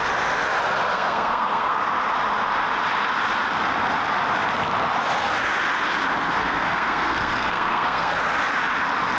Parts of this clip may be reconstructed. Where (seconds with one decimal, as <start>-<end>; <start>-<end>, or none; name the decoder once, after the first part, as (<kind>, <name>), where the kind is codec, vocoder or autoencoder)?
0.9-1.8 (codec, SNAC); 6.4-8.1